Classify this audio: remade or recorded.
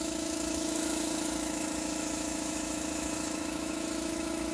remade